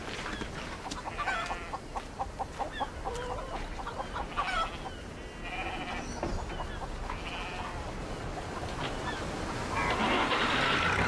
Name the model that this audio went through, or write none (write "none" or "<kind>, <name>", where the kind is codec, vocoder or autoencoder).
none